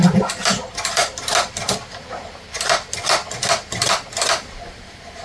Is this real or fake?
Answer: fake